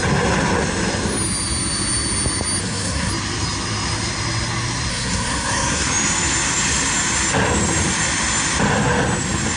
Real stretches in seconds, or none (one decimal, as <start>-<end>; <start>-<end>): 0.0-2.6; 3.1-4.9; 5.9-9.6